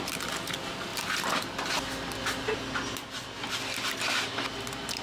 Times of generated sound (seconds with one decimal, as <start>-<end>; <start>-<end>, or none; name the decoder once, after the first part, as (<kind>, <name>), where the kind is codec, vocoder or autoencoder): none